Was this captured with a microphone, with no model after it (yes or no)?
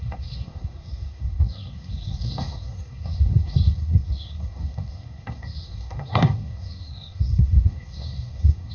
no